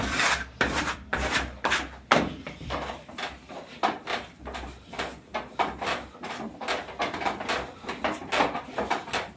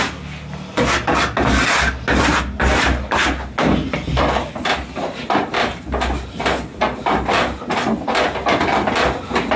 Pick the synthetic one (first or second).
first